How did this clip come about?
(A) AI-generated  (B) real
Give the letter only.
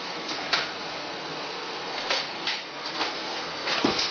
A